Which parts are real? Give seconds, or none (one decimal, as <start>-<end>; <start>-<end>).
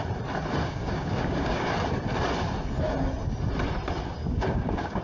0.0-0.6; 1.7-4.2